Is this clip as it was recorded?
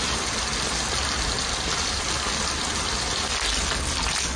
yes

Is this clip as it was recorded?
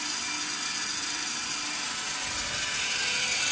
yes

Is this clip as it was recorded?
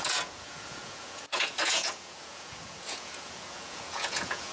no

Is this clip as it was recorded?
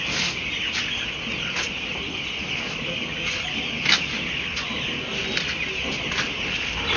yes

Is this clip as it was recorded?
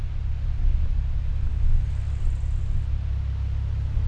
yes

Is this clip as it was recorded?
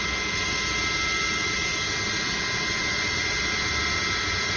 yes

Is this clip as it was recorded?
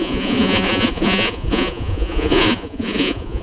no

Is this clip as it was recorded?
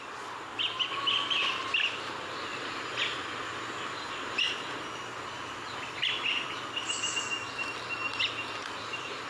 yes